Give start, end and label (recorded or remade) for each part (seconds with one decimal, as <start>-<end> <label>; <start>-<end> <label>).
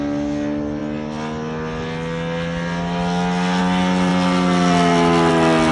0.0-5.7 recorded